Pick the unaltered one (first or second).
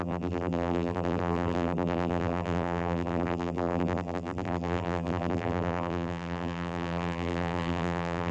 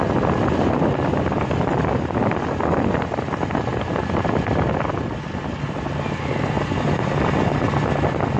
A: second